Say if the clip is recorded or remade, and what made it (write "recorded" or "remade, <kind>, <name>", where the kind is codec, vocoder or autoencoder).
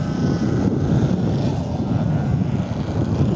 recorded